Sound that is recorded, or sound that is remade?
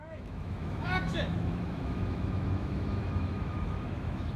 remade